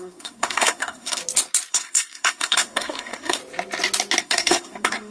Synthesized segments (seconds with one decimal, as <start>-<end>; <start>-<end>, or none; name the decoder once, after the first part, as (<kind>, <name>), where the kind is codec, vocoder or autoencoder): 0.0-1.2 (codec, SNAC); 1.7-3.4; 4.2-5.1